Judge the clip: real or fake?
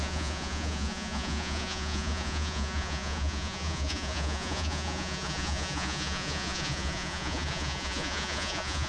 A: fake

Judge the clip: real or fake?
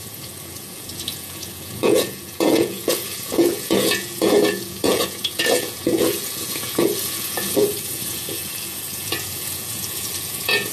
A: fake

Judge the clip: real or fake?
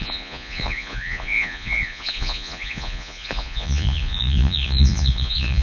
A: fake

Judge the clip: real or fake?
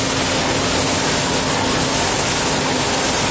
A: real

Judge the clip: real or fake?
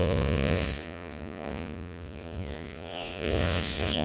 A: fake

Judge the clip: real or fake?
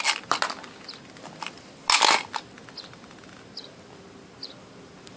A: real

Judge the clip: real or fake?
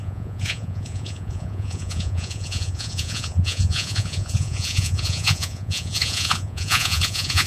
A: fake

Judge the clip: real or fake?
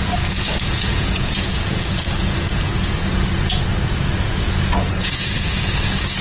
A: fake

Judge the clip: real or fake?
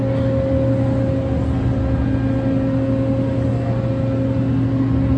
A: real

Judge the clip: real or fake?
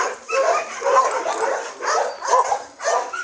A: real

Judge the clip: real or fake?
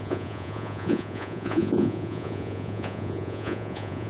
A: fake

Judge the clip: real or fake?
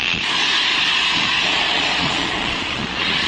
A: fake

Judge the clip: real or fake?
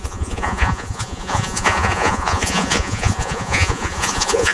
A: fake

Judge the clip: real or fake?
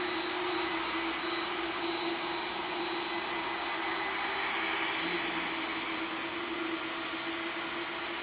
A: real